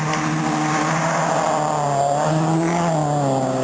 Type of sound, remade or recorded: recorded